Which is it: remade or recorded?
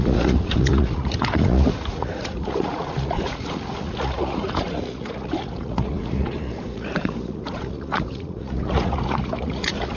remade